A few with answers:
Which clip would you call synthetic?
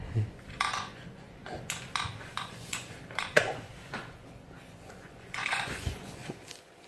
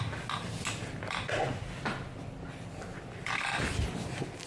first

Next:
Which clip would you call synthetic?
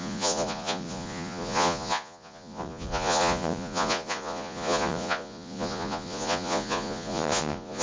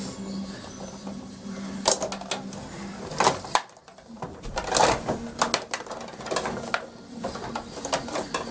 first